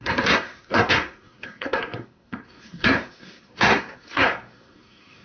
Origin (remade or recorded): remade